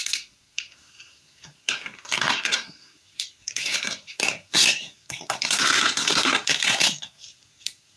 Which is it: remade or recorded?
remade